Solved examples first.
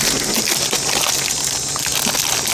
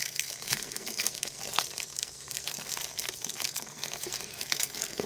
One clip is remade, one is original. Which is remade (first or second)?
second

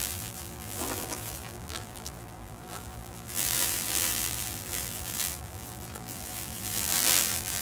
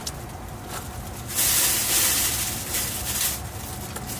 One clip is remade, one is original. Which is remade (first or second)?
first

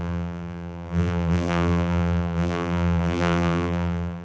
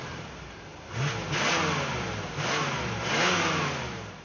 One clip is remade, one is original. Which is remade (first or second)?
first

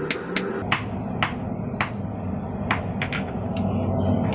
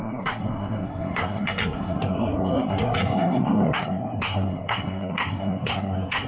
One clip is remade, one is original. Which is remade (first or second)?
second